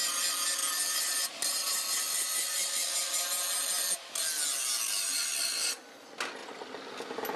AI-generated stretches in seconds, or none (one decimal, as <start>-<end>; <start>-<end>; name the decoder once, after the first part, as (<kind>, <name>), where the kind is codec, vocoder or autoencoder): none